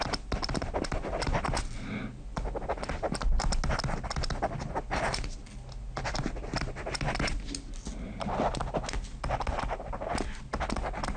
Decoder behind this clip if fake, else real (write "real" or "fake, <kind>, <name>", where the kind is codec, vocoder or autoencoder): real